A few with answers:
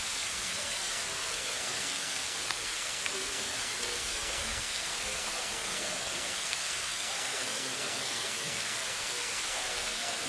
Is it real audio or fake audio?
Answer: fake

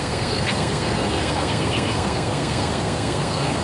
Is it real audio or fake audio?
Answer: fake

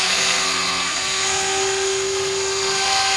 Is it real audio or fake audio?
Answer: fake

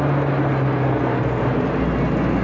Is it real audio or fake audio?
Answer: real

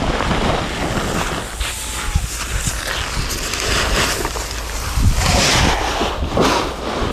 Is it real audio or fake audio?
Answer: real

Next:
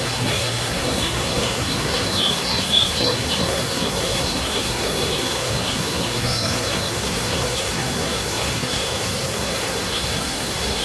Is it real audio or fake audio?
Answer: fake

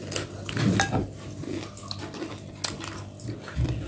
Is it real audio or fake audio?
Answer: real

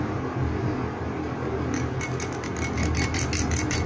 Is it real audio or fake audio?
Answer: real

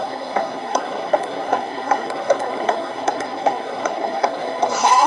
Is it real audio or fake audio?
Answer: fake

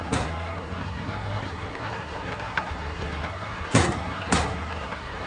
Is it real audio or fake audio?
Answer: fake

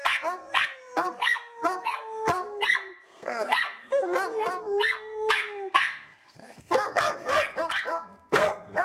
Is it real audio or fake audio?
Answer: fake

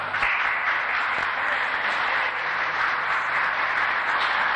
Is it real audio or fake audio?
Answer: real